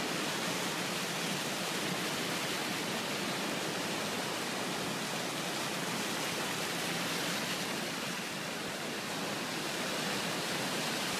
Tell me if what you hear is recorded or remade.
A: recorded